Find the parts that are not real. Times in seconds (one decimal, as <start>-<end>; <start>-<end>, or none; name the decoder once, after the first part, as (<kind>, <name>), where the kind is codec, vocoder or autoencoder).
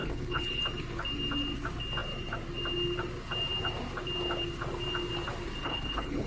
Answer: 0.0-0.6 (codec, HILCodec); 5.6-6.3